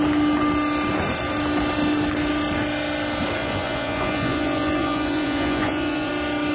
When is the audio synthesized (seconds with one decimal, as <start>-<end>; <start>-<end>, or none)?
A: 3.4-6.1